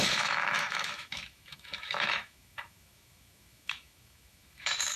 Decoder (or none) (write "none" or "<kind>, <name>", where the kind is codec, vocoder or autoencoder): autoencoder, DAC-VAE